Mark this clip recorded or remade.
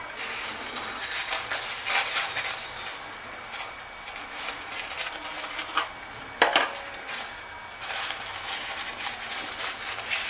recorded